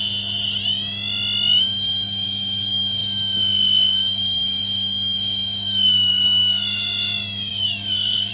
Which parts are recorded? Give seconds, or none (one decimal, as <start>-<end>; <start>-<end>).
0.0-1.6